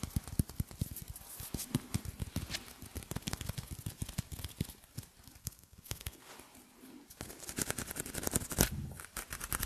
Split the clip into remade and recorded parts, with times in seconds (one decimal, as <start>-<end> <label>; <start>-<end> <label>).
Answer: 0.0-5.4 recorded; 5.4-6.3 remade; 6.3-9.7 recorded